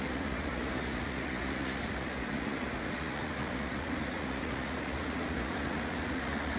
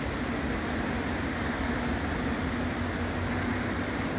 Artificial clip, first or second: first